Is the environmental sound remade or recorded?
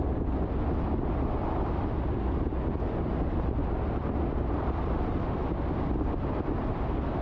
recorded